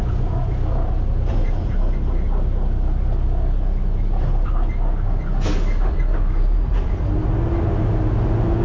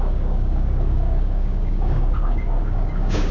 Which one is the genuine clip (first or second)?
first